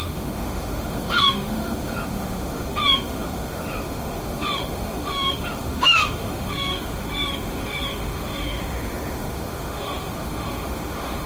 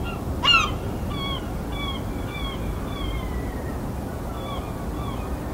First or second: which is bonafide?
second